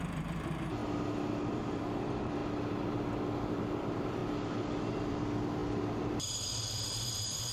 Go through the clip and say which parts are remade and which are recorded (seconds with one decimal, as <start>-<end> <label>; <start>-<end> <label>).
0.0-0.8 remade; 0.8-1.5 recorded; 1.5-2.4 remade; 2.4-3.4 recorded; 3.4-4.2 remade; 4.2-4.8 recorded; 4.8-5.6 remade; 5.6-6.1 recorded; 6.1-7.5 remade